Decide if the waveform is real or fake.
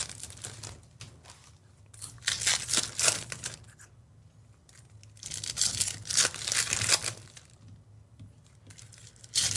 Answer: real